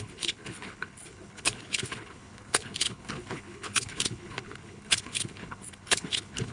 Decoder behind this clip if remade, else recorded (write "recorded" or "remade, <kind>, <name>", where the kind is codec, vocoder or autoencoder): remade, codec, HILCodec